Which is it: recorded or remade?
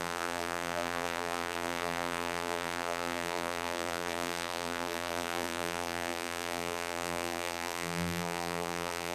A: remade